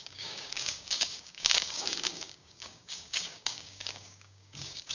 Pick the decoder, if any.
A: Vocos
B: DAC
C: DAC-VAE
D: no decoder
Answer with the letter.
B